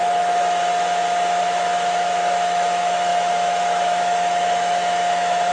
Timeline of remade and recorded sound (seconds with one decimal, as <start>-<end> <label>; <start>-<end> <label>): 0.0-0.6 remade; 0.6-1.4 recorded; 1.4-5.5 remade